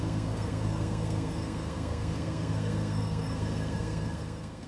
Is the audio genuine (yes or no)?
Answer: no